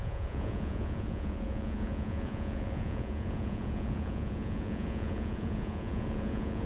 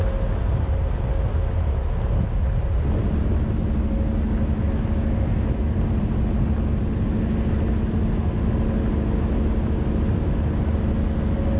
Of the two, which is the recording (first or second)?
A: second